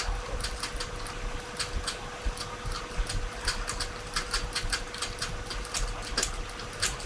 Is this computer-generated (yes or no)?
no